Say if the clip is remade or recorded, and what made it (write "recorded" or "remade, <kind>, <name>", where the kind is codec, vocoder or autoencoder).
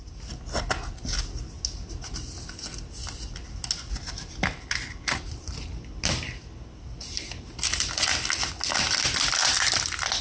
recorded